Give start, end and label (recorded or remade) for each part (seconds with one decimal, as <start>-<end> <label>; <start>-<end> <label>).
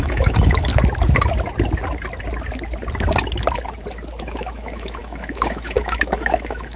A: 0.0-0.7 remade; 0.7-4.2 recorded; 4.2-6.8 remade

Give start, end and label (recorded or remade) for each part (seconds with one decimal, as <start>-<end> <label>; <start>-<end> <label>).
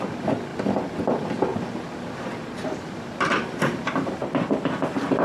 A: 0.0-0.5 remade; 0.5-1.0 recorded; 1.0-5.2 remade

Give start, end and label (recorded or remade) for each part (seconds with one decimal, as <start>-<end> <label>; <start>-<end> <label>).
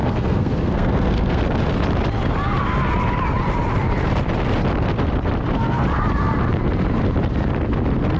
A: 0.0-1.4 remade; 1.4-8.2 recorded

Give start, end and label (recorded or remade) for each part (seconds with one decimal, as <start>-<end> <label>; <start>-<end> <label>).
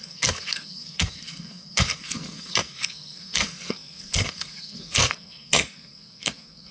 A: 0.0-6.7 remade